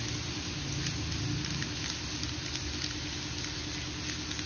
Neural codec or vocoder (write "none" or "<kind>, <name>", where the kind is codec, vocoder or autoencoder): none